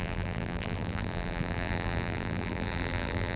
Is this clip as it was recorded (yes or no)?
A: no